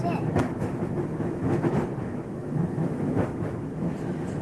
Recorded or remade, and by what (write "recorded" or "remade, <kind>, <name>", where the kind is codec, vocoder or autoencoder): remade, autoencoder, DAC-VAE